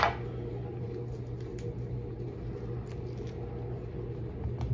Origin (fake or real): real